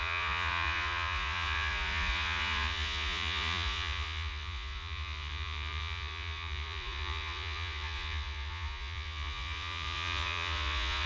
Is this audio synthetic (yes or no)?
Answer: yes